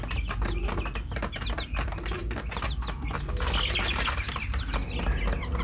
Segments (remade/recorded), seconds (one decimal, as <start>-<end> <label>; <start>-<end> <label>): 0.0-5.6 recorded